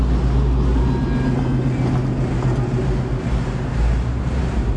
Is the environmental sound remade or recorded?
recorded